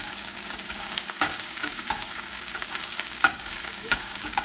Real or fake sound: fake